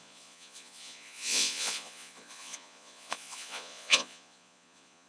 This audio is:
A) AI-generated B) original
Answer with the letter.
A